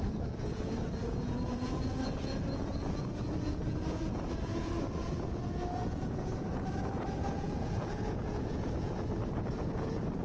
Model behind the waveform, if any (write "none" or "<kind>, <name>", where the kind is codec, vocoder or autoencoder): vocoder, Vocos